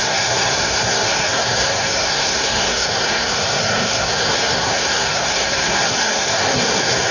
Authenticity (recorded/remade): remade